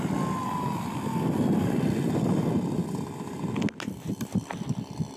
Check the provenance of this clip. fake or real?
real